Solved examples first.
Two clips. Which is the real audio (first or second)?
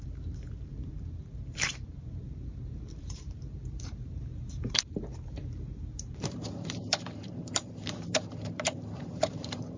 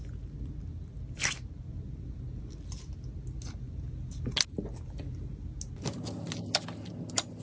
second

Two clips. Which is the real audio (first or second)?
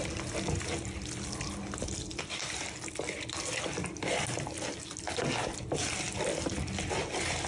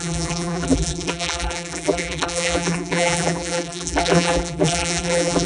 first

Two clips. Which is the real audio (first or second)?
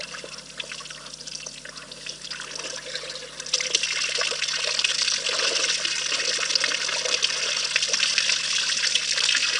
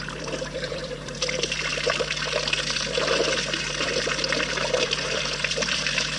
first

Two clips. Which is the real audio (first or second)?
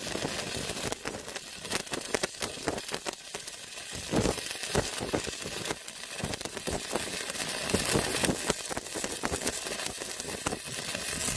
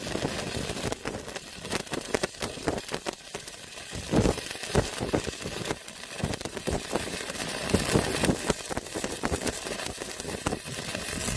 first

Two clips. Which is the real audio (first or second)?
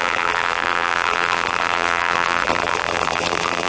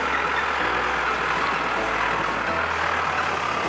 second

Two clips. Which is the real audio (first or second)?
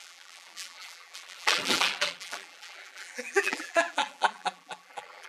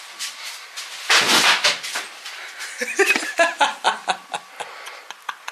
second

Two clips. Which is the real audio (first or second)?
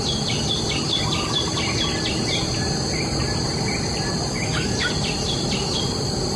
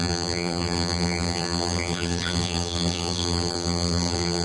first